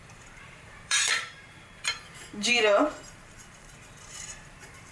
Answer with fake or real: fake